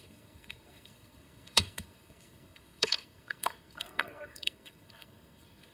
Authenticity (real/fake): fake